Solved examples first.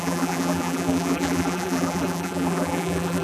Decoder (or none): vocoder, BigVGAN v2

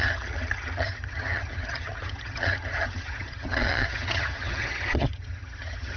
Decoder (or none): vocoder, HiFi-GAN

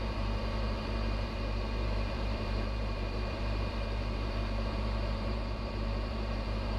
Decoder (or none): vocoder, BigVGAN v2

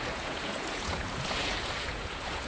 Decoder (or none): vocoder, Vocos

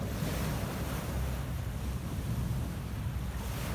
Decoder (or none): none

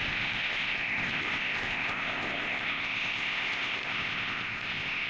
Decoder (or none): codec, ZipCodec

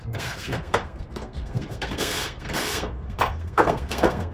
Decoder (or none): codec, SNAC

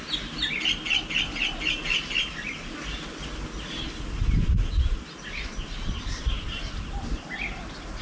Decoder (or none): none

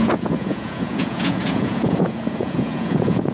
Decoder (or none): vocoder, Vocos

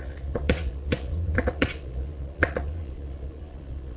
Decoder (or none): vocoder, Vocos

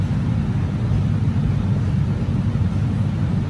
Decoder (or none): none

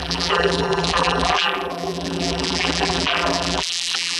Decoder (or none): vocoder, BigVGAN v2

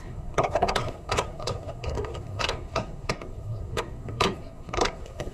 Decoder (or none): codec, SNAC